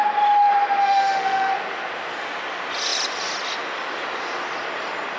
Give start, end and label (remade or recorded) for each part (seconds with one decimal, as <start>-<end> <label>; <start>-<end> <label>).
0.0-0.8 recorded; 0.8-1.5 remade; 1.5-5.2 recorded